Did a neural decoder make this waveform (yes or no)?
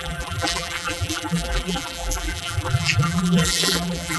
yes